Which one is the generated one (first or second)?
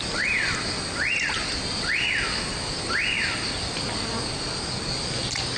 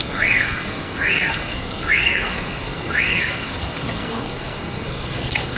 second